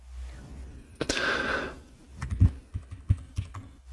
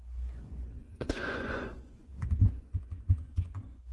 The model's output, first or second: second